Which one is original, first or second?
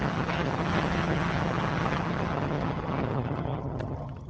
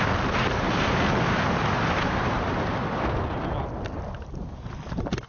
second